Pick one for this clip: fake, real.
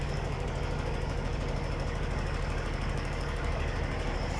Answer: fake